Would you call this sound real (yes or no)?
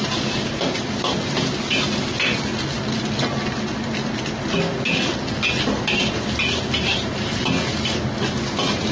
yes